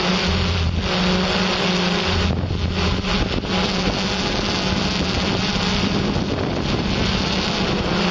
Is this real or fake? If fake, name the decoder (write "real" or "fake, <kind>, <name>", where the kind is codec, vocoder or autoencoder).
real